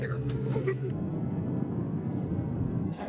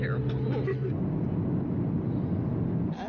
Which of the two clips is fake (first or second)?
first